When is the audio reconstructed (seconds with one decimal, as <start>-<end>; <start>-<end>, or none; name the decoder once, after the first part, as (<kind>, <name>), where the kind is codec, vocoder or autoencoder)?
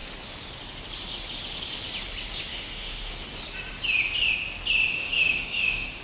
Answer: 2.5-3.1 (autoencoder, DAC-VAE); 4.9-6.0